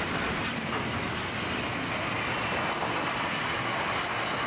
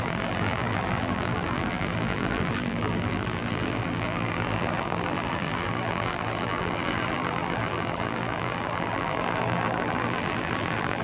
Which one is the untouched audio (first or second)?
first